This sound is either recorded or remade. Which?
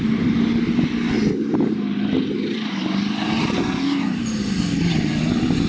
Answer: recorded